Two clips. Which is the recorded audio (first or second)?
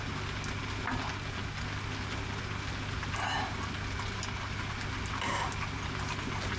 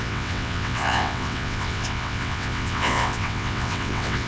first